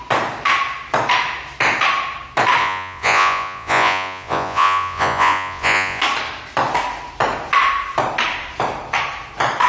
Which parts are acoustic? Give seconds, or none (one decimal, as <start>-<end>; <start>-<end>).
0.0-2.6; 6.0-9.7